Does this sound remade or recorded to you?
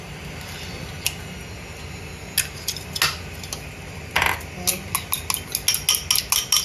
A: recorded